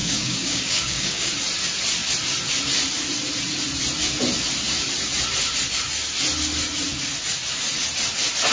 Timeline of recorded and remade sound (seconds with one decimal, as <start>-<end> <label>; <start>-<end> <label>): 0.0-1.3 remade; 1.3-8.5 recorded